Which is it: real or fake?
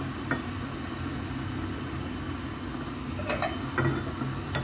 real